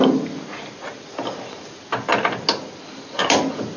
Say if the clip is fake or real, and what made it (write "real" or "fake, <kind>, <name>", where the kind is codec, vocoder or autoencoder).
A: real